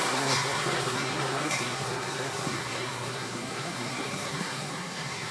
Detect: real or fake fake